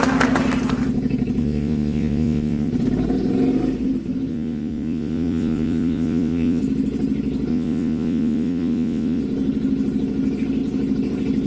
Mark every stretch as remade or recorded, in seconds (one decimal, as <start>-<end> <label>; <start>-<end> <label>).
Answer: 0.0-1.4 recorded; 1.4-2.7 remade; 2.7-4.3 recorded; 4.3-6.6 remade; 6.6-7.5 recorded; 7.5-9.2 remade; 9.2-11.5 recorded